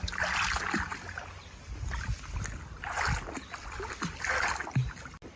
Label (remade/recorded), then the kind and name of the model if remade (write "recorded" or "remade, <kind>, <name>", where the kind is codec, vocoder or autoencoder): recorded